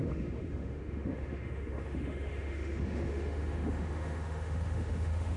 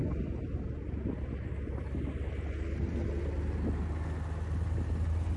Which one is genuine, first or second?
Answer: second